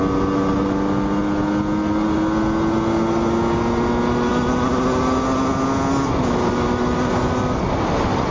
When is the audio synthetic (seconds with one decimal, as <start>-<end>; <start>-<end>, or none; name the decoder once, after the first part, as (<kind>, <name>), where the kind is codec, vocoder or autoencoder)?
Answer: none

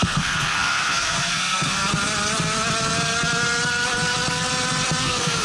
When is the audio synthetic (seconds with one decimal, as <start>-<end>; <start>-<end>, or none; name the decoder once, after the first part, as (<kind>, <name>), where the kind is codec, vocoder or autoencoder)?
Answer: 0.0-1.8 (codec, SNAC); 5.0-5.4